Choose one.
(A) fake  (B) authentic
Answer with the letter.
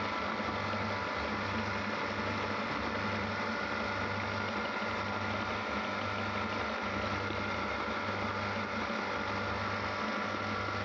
B